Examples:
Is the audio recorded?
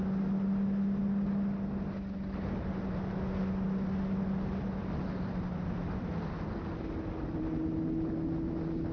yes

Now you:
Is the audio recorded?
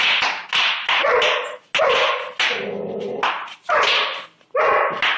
yes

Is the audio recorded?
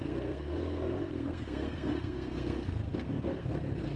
no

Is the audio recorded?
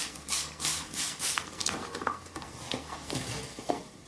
no